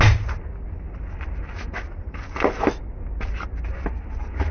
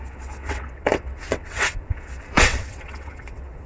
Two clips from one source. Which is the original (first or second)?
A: first